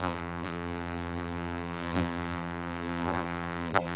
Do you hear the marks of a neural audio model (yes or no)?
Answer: yes